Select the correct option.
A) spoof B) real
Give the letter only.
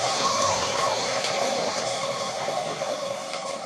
A